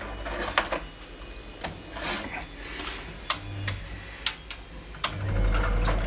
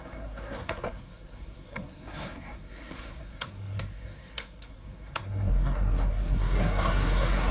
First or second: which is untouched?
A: first